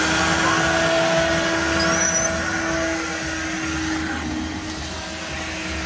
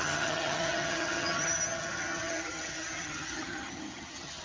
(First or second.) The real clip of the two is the first